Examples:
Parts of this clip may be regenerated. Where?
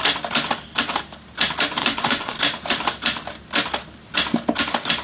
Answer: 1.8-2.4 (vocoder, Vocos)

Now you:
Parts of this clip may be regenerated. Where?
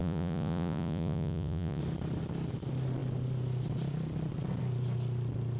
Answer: 0.0-1.8 (vocoder, Vocos)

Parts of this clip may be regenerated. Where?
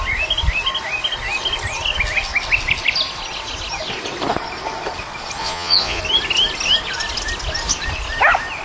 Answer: 5.4-6.0 (vocoder, Vocos)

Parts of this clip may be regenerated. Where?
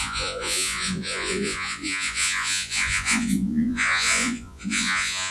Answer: 0.0-5.3 (vocoder, Vocos)